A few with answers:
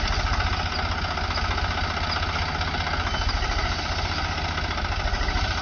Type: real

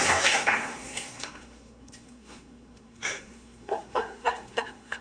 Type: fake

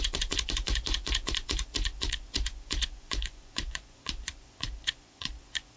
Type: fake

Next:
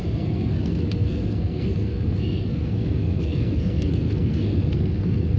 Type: fake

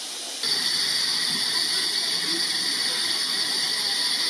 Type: real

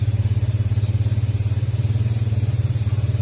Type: fake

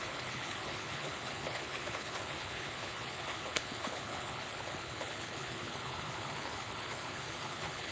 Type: fake